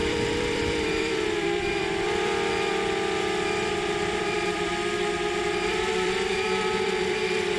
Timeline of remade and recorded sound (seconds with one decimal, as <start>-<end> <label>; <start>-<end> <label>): 0.0-4.7 remade; 4.7-5.7 recorded; 5.7-7.6 remade